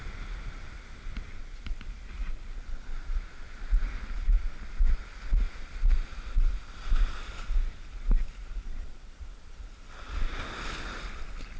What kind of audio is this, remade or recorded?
recorded